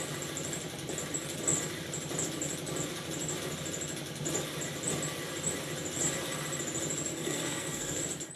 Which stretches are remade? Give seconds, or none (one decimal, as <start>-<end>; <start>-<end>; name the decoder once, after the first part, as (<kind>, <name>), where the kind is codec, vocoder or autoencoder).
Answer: 7.1-8.0 (codec, SNAC)